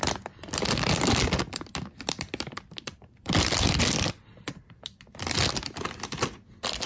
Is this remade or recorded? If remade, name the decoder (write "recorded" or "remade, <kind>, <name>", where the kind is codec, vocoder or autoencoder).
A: recorded